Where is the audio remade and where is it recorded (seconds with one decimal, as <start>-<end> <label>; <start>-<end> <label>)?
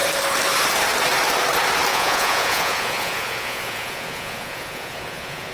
0.0-1.9 recorded; 1.9-5.5 remade